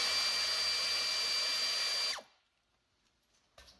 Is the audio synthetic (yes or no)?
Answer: no